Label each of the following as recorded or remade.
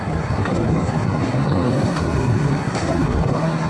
remade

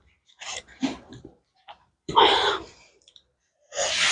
remade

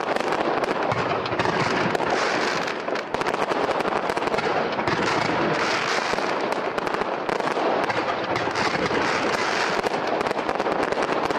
recorded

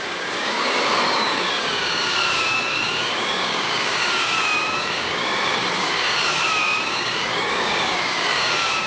remade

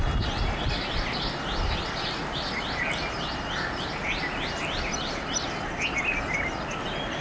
recorded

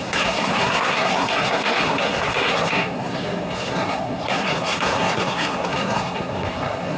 remade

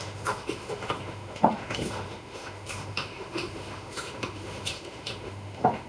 remade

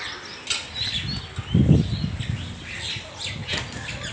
recorded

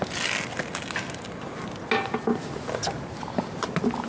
recorded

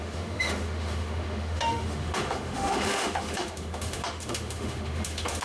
remade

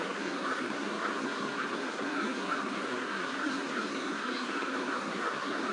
remade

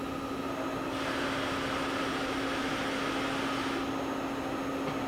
recorded